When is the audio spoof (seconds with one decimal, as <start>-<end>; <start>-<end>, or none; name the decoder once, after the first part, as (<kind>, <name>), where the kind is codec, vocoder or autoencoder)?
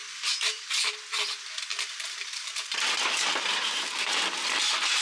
0.0-0.9 (vocoder, BigVGAN v2); 1.7-4.1